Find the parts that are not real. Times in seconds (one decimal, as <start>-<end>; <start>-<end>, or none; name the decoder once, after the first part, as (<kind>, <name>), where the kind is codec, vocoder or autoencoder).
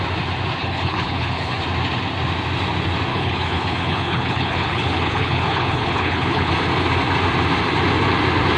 0.6-1.6 (codec, HILCodec); 3.1-6.5